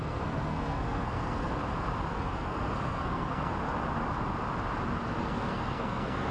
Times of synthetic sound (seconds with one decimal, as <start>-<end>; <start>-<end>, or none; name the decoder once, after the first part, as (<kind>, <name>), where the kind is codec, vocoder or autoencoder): 0.0-1.5 (codec, SNAC); 2.1-3.5; 5.2-6.3